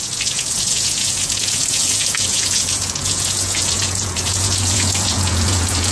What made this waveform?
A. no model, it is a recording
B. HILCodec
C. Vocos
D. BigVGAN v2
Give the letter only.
C